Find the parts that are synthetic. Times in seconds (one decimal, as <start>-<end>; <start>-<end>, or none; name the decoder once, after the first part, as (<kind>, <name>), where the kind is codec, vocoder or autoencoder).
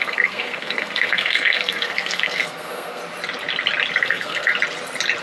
0.0-3.0 (codec, SNAC); 4.0-4.5